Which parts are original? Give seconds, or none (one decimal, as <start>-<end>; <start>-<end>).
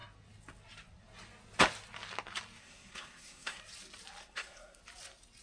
0.0-2.6; 3.6-4.2; 4.8-5.4